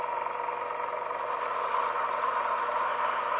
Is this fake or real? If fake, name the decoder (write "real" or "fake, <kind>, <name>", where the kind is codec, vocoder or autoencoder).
real